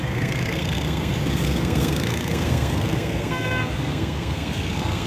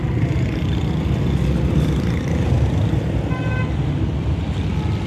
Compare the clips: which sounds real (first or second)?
second